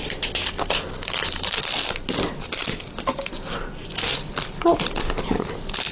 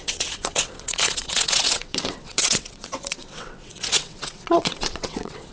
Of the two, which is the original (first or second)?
first